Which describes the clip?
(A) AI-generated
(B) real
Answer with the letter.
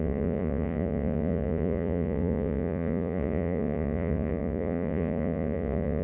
A